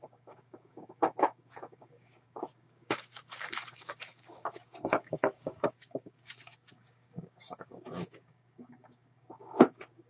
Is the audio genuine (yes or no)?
no